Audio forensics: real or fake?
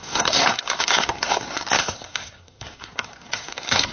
fake